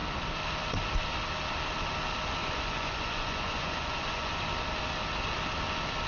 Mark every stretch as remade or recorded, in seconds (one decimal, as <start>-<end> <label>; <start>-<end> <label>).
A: 0.0-2.4 recorded; 2.4-4.3 remade; 4.3-6.1 recorded